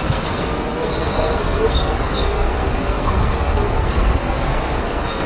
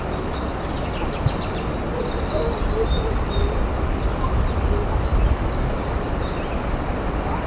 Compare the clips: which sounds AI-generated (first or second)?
first